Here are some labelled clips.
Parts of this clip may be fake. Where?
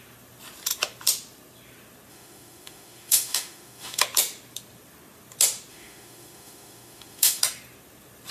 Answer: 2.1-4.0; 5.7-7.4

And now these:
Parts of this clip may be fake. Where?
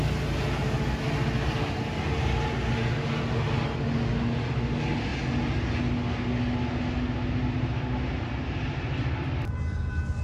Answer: none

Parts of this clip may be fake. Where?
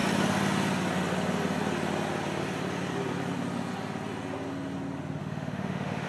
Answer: 5.2-6.1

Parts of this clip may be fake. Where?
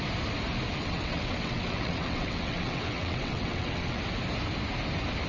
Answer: 0.8-4.0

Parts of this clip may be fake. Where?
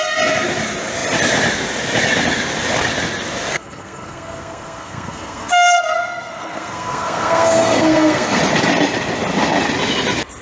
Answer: 3.5-8.4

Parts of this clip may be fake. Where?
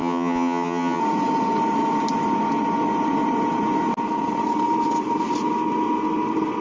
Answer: 0.0-1.0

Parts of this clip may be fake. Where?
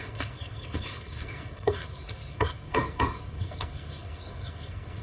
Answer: 0.0-5.0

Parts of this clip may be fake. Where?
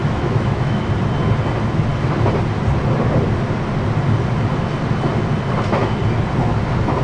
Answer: 0.0-0.9